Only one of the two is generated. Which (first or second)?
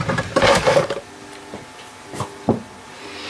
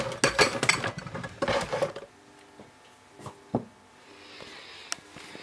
first